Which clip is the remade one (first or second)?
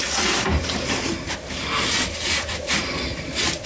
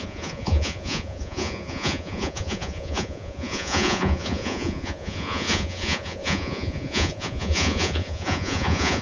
second